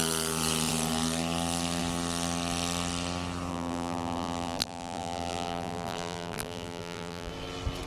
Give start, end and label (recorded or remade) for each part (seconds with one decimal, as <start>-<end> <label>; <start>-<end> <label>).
0.0-3.5 recorded; 3.5-7.3 remade; 7.3-7.9 recorded